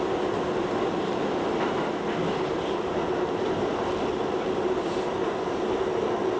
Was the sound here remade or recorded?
recorded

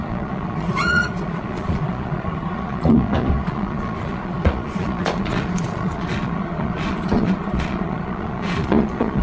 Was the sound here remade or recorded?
remade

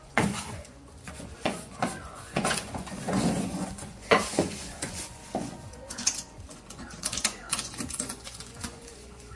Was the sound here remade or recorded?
remade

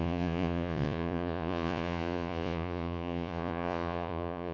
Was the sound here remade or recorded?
remade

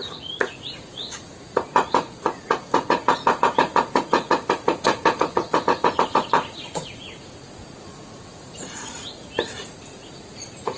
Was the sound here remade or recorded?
remade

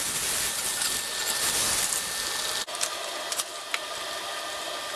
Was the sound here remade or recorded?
recorded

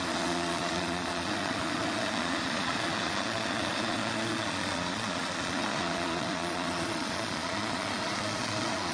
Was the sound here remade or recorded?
remade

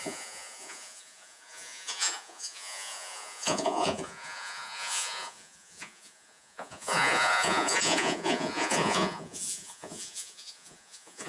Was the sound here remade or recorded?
remade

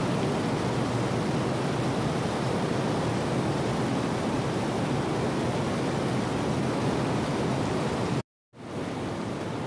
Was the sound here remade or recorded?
recorded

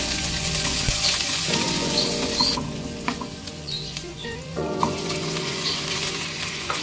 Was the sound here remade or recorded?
remade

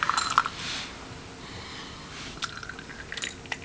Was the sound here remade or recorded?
recorded